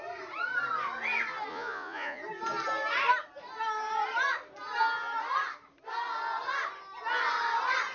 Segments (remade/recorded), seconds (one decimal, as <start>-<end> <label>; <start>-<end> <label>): 0.0-1.5 recorded; 1.5-2.2 remade; 2.2-7.9 recorded